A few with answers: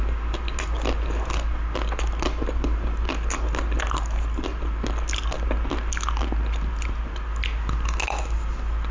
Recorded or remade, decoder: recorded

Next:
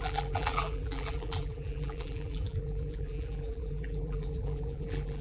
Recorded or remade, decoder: remade, vocoder, BigVGAN v2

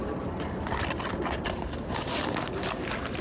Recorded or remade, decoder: recorded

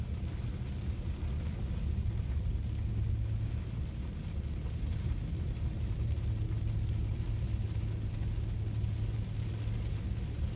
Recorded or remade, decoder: recorded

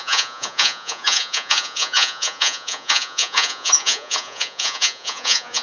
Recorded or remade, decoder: remade, vocoder, Vocos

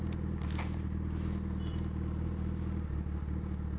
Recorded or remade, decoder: recorded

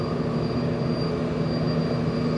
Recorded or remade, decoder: recorded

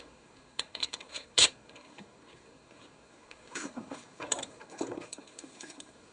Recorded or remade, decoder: remade, codec, SNAC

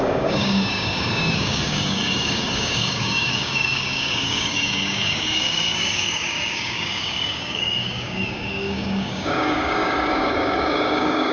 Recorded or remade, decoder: remade, codec, DAC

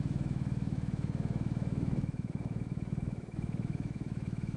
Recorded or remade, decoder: remade, autoencoder, DAC-VAE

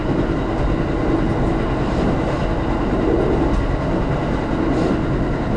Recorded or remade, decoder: recorded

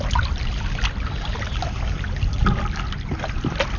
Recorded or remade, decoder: recorded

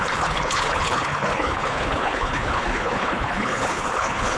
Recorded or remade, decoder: remade, codec, HILCodec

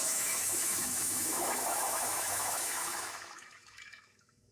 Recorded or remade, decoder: remade, autoencoder, DAC-VAE